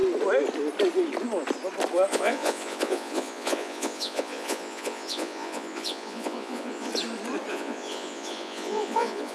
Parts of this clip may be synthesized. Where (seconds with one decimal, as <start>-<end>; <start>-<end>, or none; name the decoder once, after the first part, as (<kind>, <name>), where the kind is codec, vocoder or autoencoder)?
2.1-6.9 (vocoder, Vocos); 7.5-9.3